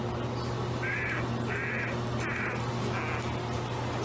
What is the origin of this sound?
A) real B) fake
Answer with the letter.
A